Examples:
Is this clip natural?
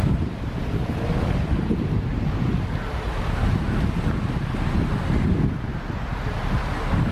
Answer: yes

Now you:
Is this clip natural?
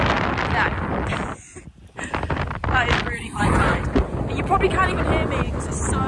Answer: yes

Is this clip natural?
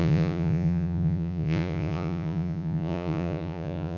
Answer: no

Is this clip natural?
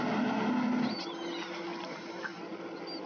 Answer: yes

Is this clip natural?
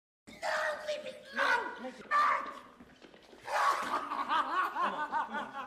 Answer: yes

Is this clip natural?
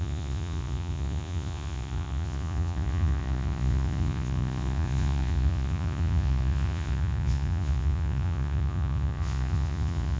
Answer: no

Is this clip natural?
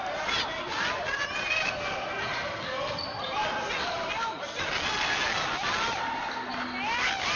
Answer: yes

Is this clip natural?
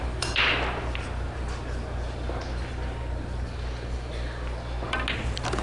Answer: yes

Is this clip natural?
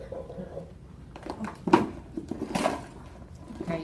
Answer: yes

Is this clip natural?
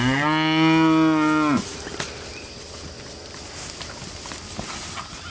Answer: yes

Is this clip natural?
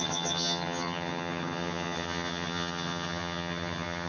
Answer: no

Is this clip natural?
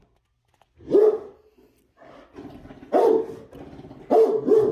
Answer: yes